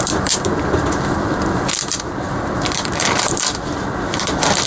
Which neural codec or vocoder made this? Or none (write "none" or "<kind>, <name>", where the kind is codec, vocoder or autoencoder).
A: vocoder, BigVGAN v2